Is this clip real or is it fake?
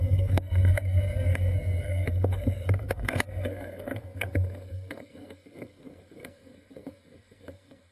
fake